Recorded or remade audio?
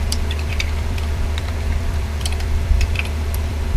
remade